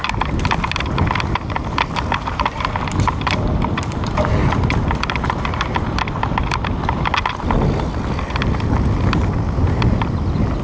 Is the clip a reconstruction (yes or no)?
no